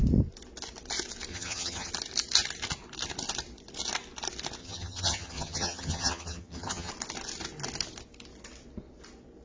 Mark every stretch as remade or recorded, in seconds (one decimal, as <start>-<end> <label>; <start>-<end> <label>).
0.0-1.3 recorded; 1.3-1.9 remade; 1.9-4.6 recorded; 4.6-6.9 remade; 6.9-9.4 recorded